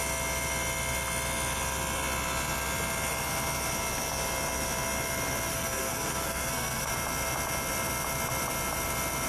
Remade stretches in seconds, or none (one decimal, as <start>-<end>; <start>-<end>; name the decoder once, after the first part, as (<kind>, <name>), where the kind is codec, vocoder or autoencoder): 5.5-6.9 (codec, SNAC)